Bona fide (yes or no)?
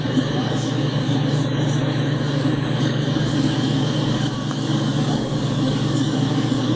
no